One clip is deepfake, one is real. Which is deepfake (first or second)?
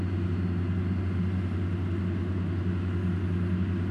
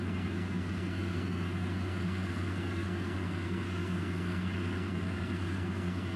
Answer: second